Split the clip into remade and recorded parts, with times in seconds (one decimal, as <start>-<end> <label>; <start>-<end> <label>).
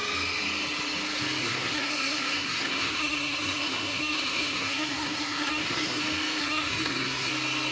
0.0-1.4 recorded; 1.4-6.0 remade; 6.0-6.4 recorded; 6.4-7.3 remade; 7.3-7.7 recorded